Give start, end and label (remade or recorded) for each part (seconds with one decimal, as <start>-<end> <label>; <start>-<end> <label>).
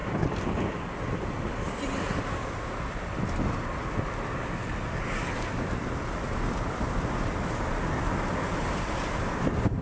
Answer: 0.0-9.8 recorded